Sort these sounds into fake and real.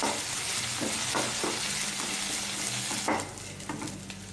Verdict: real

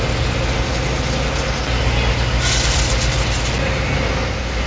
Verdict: real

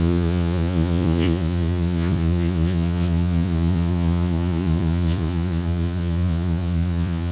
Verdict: fake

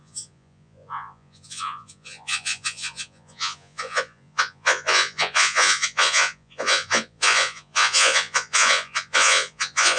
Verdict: fake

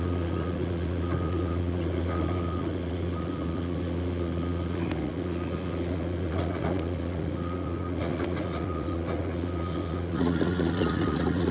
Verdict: fake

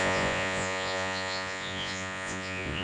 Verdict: fake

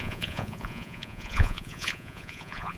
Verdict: fake